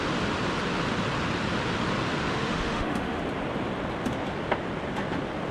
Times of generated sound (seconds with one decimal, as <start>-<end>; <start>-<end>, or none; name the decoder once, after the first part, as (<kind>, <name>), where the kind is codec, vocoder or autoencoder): 2.3-3.2 (autoencoder, DAC-VAE)